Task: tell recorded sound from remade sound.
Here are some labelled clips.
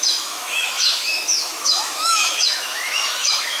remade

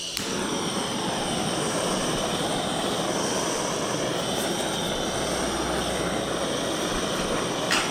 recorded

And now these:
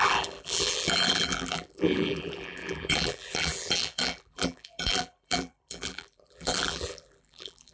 remade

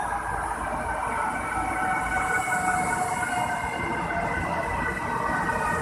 recorded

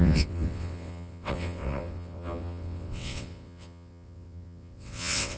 remade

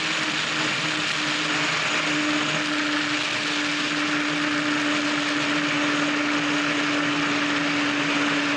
recorded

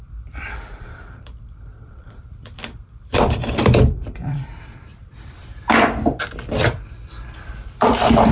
remade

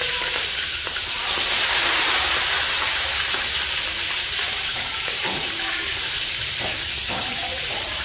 remade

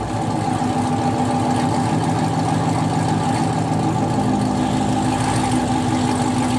recorded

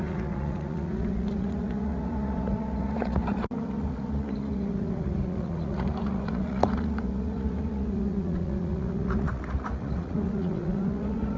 remade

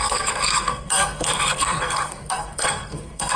remade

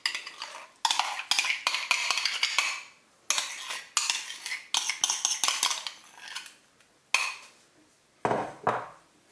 recorded